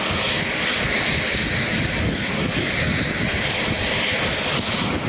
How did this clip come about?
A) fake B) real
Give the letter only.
B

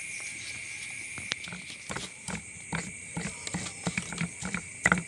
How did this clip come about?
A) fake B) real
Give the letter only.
B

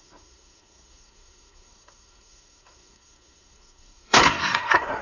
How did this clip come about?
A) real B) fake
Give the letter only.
B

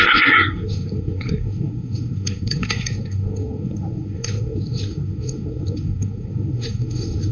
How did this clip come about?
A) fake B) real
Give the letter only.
A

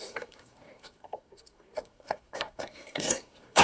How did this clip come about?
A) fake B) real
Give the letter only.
A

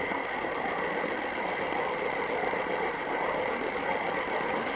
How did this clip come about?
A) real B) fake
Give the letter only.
A